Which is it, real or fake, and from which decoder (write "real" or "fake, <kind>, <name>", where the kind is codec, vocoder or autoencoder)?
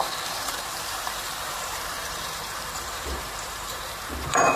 fake, vocoder, BigVGAN v2